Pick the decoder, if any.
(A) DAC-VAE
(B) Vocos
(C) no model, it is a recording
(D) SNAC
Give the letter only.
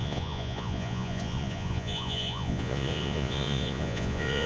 B